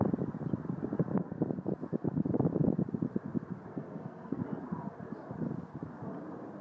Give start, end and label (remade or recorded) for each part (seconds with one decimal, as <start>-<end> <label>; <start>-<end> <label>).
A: 0.0-3.7 recorded; 3.7-4.4 remade; 4.4-6.6 recorded